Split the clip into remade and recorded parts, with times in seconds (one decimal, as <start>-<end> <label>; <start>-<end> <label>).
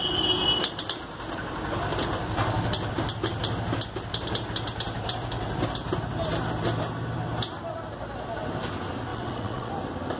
0.0-9.1 recorded; 9.1-9.7 remade; 9.7-10.2 recorded